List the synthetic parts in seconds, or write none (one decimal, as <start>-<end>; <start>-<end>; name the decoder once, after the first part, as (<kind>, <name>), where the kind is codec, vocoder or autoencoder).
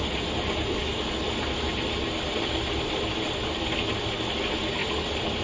none